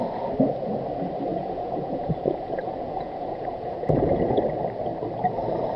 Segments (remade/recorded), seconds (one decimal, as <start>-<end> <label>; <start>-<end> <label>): 0.0-1.3 recorded; 1.3-4.4 remade; 4.4-5.8 recorded